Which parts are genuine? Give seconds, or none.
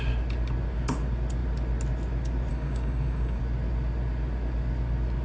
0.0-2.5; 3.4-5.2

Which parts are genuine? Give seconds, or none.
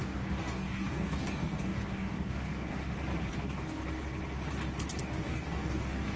2.7-3.3; 3.8-5.0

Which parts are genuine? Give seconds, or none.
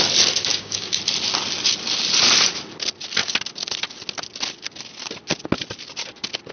0.0-0.5; 1.0-6.5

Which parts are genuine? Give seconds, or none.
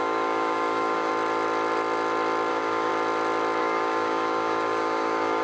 1.1-2.5; 2.9-3.6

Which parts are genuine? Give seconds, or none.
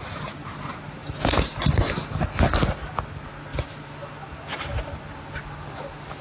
0.0-6.2